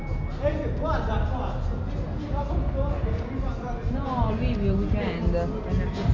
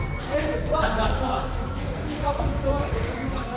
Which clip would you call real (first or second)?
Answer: first